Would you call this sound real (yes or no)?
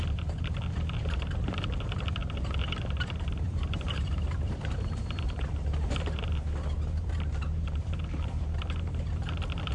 no